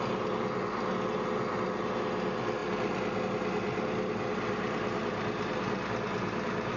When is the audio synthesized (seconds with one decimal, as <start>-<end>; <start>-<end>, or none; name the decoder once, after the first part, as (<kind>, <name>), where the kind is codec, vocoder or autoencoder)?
none